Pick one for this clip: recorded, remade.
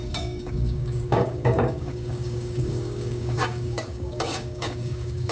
remade